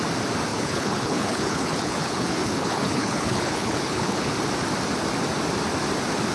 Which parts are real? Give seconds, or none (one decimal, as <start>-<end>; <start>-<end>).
0.0-0.5; 4.3-6.3